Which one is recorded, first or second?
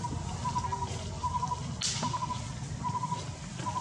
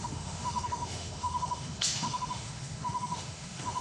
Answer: first